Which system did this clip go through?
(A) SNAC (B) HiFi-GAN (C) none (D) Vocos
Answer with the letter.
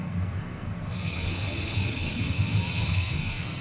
A